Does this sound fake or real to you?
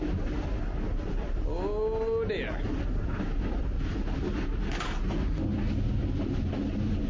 real